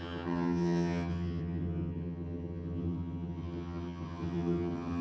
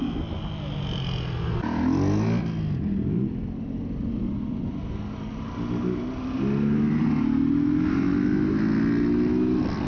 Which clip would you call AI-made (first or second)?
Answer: first